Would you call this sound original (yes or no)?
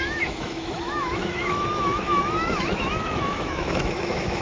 no